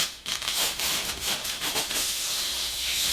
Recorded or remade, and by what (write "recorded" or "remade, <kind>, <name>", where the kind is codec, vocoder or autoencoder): remade, autoencoder, DAC-VAE